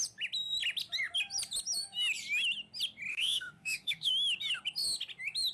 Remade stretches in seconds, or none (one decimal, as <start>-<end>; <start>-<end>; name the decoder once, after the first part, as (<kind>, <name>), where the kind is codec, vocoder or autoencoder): 3.1-4.1 (autoencoder, DAC-VAE)